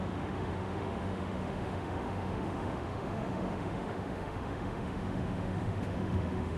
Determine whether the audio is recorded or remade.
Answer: remade